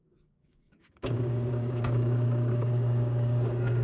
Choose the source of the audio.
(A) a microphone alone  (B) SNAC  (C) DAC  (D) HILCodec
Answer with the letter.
C